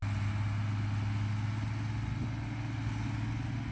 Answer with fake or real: real